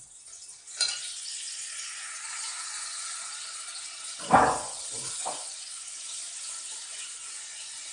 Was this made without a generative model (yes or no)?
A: no